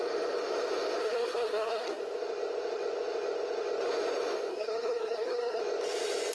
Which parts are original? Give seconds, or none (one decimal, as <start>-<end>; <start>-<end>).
0.0-1.0; 2.0-4.5; 5.6-6.3